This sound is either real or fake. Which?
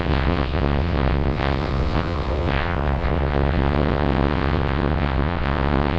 fake